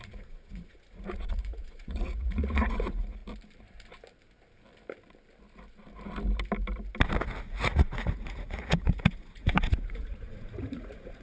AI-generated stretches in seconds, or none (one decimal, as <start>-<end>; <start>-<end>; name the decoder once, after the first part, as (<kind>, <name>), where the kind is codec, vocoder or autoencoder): 0.0-3.2 (vocoder, Vocos); 7.4-11.2

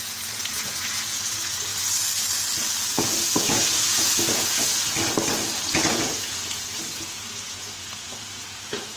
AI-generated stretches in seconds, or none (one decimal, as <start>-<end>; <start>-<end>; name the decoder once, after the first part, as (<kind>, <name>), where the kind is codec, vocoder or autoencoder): 0.0-1.7 (vocoder, Vocos); 2.7-4.7; 5.7-9.0

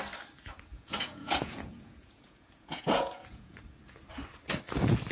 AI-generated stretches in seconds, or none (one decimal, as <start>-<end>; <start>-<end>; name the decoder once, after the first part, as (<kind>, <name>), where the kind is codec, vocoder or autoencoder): 0.7-3.6 (vocoder, Vocos)

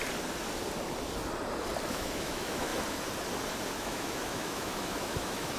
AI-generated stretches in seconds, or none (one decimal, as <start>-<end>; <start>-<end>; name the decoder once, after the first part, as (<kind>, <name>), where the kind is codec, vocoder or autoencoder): 1.9-2.7 (autoencoder, DAC-VAE); 3.7-5.6

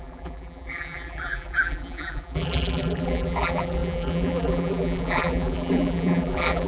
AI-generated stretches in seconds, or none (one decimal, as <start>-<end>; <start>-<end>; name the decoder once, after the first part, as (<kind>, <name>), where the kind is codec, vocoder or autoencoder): 0.0-6.7 (vocoder, BigVGAN v2)

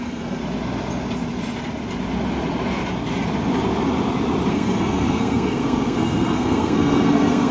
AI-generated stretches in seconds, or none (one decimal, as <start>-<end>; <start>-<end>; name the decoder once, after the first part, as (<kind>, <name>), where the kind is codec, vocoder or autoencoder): 0.0-0.4 (codec, SNAC); 4.5-7.5

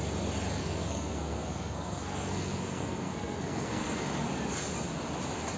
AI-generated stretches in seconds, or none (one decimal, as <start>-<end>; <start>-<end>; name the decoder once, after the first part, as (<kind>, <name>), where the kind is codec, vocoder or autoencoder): 0.6-4.0 (codec, SNAC)